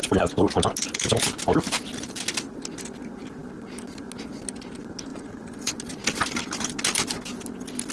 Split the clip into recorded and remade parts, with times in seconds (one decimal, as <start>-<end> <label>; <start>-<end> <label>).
0.0-5.1 recorded; 5.1-5.7 remade; 5.7-7.9 recorded